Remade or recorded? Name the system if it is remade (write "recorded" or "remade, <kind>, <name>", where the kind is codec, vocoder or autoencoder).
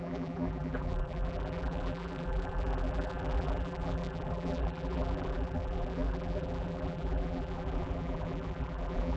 remade, vocoder, BigVGAN v2